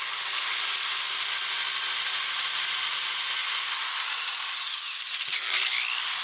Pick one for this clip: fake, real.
real